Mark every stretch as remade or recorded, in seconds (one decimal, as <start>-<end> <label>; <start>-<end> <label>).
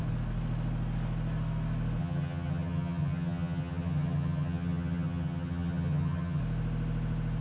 0.0-2.0 recorded; 2.0-6.4 remade; 6.4-7.4 recorded